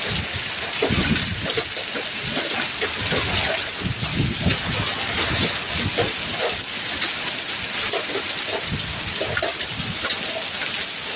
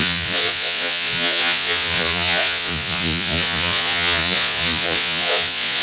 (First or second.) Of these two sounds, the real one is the first